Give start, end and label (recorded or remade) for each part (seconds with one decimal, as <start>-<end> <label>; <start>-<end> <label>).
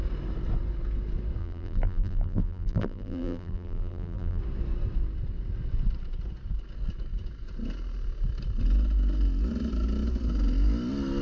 0.0-1.4 recorded; 1.4-4.4 remade; 4.4-11.2 recorded